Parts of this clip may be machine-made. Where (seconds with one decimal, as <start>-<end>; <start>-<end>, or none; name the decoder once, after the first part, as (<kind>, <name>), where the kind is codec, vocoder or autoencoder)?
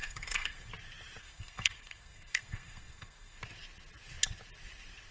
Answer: 0.0-0.7 (codec, SNAC); 1.2-3.4